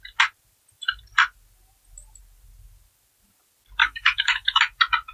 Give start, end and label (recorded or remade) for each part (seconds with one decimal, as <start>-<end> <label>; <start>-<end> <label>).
0.0-3.8 recorded; 3.8-4.6 remade; 4.6-5.1 recorded

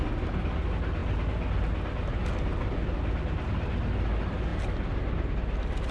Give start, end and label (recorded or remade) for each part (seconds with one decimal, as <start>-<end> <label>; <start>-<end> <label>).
0.0-5.9 recorded